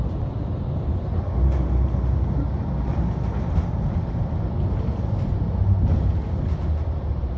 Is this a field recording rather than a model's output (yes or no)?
yes